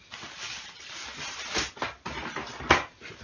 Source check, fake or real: real